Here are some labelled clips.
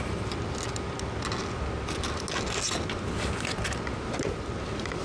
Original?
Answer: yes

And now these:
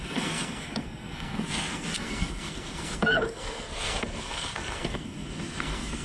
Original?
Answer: no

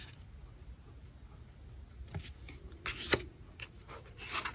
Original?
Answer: yes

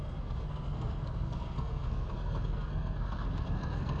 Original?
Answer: no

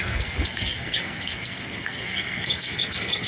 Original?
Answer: no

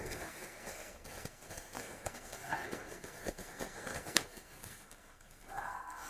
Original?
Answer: no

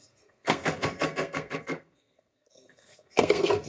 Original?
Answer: no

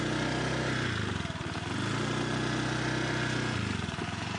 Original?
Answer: yes